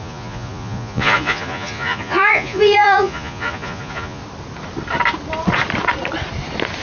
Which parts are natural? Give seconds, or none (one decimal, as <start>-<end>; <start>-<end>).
4.2-6.8